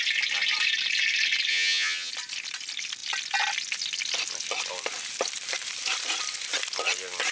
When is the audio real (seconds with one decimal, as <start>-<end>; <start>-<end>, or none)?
0.0-1.5; 2.1-7.3